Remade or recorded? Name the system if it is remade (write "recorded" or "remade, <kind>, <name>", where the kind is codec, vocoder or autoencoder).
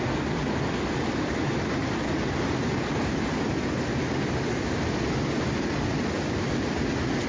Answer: recorded